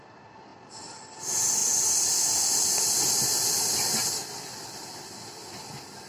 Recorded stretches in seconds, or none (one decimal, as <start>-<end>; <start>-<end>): 0.0-6.1